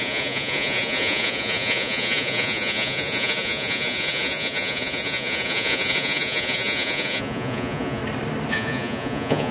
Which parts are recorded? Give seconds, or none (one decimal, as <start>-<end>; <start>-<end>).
8.0-8.5